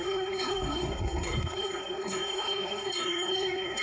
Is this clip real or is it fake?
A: fake